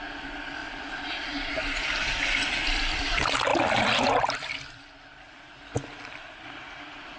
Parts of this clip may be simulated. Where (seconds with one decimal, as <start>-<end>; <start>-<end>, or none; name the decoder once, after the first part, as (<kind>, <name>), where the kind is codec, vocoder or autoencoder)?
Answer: 0.0-7.2 (vocoder, BigVGAN v2)